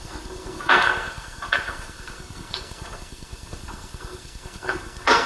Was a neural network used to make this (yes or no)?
yes